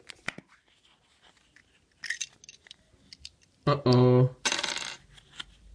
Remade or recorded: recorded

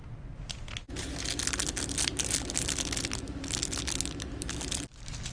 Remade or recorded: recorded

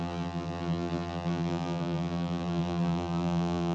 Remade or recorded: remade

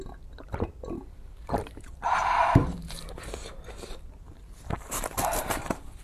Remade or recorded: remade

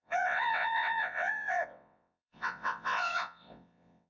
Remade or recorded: remade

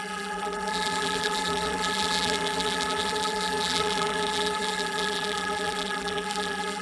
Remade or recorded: remade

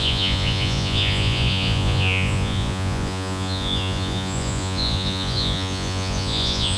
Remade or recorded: remade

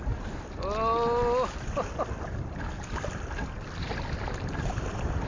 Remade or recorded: recorded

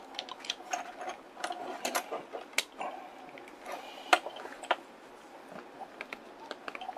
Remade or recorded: recorded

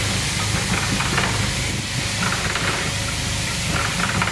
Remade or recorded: recorded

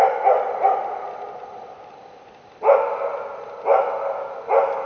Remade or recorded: recorded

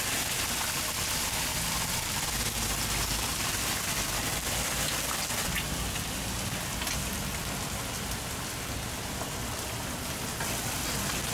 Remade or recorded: recorded